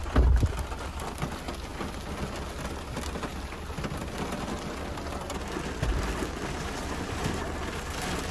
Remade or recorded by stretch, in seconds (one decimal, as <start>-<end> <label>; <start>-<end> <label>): 0.0-8.3 recorded